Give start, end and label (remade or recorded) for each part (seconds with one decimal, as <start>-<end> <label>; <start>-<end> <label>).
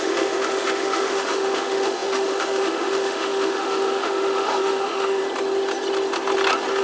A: 0.0-5.2 remade; 5.2-6.8 recorded